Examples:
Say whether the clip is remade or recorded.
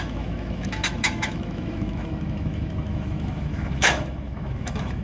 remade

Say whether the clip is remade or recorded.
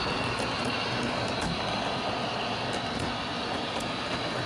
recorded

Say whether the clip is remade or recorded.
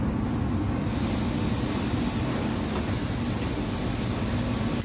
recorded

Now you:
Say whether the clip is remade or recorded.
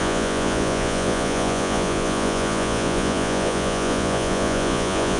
remade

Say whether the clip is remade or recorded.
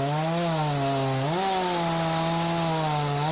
recorded